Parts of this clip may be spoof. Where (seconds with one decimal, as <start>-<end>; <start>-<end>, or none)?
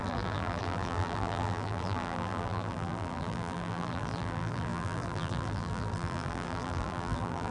0.0-7.5